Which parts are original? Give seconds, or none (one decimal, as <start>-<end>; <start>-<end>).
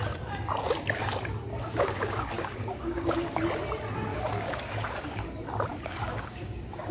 0.0-1.5; 3.4-4.1; 5.2-5.7